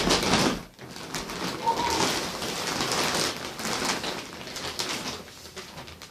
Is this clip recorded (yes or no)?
yes